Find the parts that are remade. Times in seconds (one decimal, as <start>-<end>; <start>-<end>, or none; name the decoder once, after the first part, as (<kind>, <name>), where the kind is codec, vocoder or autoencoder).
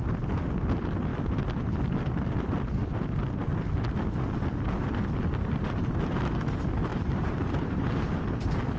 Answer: 6.9-8.1 (vocoder, BigVGAN v2)